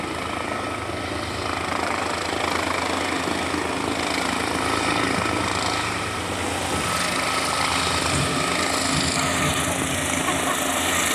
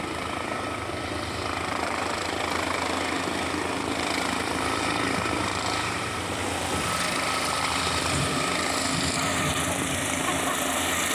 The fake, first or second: second